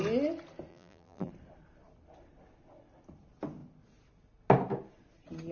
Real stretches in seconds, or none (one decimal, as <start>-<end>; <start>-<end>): 0.0-0.7; 1.3-5.5